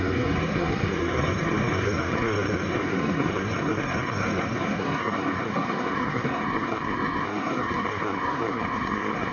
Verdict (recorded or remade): remade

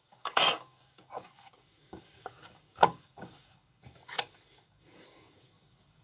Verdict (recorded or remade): remade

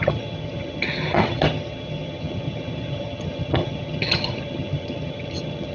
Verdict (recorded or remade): remade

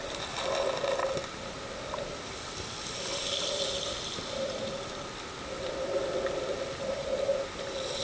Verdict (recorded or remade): recorded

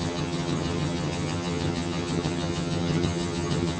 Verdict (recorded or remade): remade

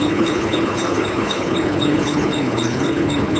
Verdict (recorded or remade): remade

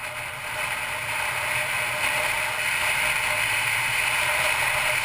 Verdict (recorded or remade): recorded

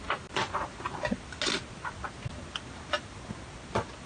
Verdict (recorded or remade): recorded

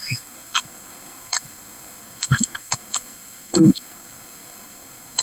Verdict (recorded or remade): remade